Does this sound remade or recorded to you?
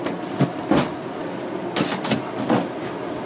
recorded